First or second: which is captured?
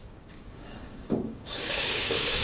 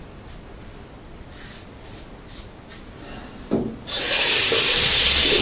second